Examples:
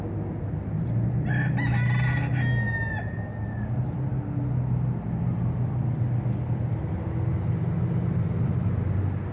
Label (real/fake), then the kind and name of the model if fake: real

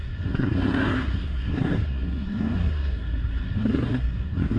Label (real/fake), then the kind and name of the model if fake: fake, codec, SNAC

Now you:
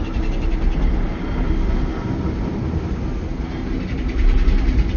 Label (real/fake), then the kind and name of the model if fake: real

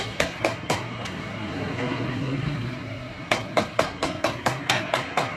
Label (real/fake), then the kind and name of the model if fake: fake, codec, SNAC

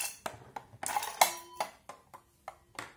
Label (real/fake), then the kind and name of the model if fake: real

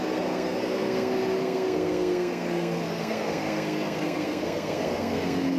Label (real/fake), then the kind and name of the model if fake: fake, codec, SNAC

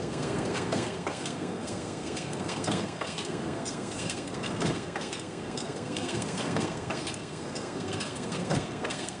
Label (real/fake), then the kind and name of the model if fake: fake, codec, SNAC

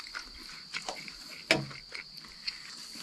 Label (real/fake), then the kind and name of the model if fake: real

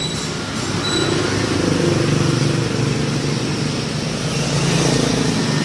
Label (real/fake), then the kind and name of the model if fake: real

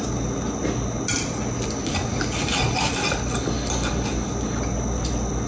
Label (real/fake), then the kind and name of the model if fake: real